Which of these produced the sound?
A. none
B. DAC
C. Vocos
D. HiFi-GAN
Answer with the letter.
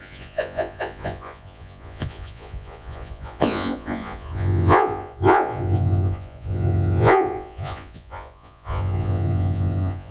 C